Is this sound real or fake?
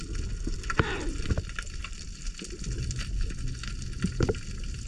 real